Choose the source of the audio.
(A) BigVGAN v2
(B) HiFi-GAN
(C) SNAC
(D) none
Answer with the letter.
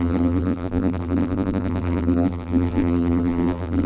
A